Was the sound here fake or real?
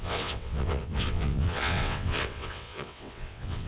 fake